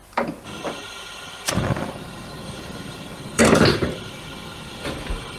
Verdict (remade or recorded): remade